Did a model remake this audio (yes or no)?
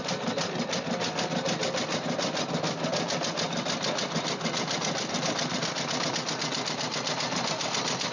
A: no